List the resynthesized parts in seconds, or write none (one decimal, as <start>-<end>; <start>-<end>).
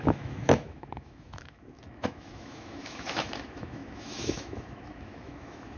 0.0-5.8